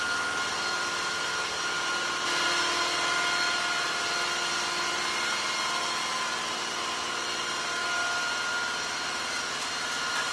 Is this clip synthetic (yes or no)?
no